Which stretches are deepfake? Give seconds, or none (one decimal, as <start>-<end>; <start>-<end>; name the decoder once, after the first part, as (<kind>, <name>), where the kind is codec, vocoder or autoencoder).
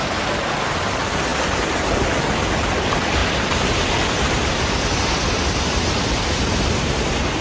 none